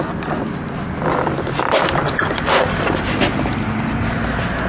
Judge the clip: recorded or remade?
recorded